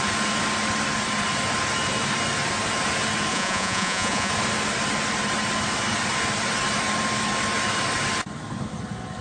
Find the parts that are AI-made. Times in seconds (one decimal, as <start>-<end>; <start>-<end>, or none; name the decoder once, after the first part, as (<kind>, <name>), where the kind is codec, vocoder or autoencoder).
3.3-4.3 (vocoder, Vocos)